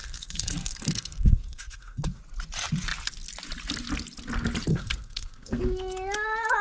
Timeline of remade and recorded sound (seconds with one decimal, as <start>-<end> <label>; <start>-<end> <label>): 0.0-2.2 remade; 2.2-4.7 recorded; 4.7-5.6 remade; 5.6-6.6 recorded